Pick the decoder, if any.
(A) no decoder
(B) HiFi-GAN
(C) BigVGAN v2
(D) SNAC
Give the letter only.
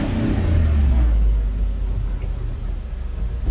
A